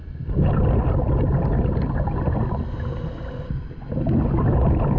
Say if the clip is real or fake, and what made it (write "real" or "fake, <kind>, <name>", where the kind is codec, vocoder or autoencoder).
real